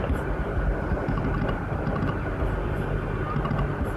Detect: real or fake real